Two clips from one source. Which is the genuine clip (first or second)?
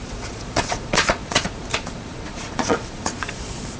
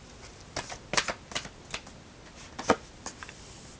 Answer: second